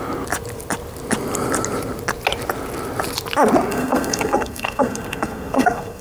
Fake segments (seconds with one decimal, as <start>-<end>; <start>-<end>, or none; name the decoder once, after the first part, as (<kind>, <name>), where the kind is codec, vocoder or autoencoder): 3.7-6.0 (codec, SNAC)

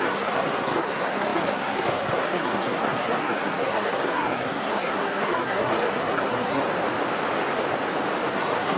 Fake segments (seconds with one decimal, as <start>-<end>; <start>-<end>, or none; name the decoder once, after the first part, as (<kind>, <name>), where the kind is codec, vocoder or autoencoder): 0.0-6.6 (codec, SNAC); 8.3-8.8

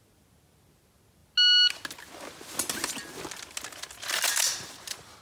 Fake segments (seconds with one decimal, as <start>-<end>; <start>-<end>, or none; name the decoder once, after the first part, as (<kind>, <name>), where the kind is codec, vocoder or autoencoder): none

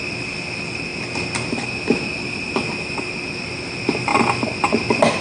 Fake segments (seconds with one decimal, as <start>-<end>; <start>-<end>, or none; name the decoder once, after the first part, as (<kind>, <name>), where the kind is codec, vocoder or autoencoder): none

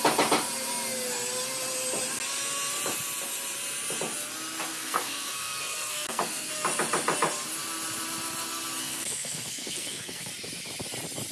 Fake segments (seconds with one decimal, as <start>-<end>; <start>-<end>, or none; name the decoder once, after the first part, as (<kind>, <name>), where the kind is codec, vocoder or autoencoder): 4.7-6.5 (codec, SNAC); 8.8-10.3